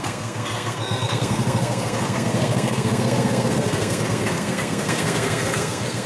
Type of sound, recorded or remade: remade